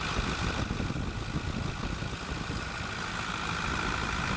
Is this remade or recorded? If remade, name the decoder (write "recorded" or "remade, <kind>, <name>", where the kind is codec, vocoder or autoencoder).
recorded